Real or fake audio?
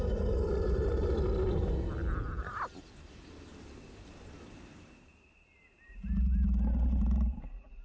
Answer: real